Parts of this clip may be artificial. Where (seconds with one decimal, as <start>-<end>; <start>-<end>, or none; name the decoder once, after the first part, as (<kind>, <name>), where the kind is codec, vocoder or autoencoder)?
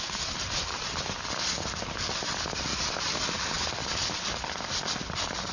none